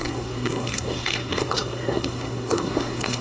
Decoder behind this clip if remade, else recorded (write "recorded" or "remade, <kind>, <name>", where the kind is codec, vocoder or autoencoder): remade, codec, SNAC